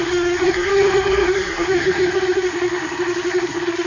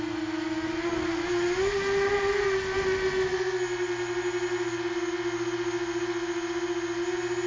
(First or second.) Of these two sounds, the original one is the second